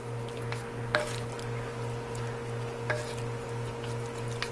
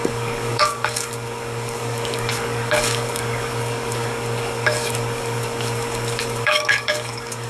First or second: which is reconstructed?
second